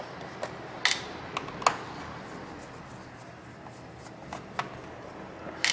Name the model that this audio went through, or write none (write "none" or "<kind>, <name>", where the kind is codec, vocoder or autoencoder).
none